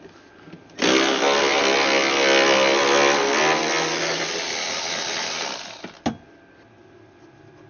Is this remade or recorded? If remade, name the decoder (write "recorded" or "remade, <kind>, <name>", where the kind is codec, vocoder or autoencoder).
recorded